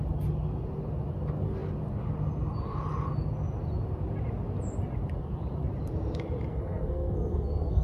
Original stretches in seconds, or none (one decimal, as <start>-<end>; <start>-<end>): 0.0-6.5